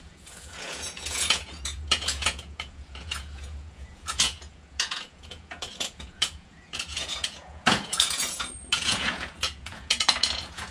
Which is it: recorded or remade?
remade